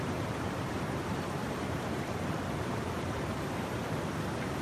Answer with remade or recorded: remade